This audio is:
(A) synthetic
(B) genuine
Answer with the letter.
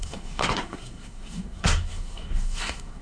A